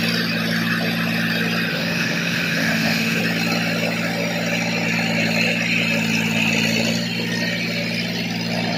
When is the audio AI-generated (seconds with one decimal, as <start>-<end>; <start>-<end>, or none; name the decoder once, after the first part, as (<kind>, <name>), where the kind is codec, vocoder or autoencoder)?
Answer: 1.7-3.2 (autoencoder, DAC-VAE)